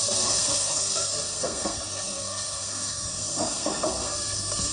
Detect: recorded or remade remade